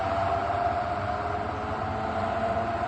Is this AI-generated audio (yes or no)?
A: no